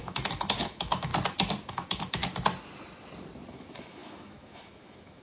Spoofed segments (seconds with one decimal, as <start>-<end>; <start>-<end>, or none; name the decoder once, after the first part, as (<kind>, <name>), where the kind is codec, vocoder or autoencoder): 0.0-1.1 (autoencoder, DAC-VAE); 1.7-2.2; 3.5-5.2